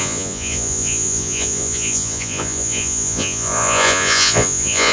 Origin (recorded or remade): remade